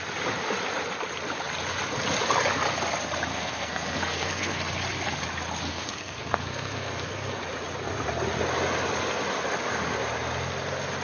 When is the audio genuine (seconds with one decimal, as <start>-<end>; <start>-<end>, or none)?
0.0-3.3; 4.6-5.7; 7.4-11.0